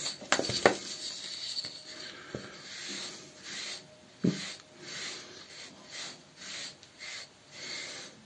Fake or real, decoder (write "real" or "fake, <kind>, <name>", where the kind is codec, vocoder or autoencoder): real